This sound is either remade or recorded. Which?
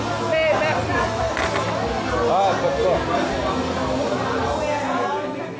recorded